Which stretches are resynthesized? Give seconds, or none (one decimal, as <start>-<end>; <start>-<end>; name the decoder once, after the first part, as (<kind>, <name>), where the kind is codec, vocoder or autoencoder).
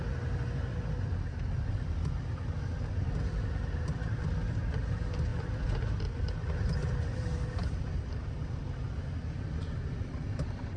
none